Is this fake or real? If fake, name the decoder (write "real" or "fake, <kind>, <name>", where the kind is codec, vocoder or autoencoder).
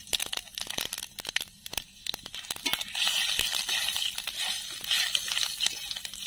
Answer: real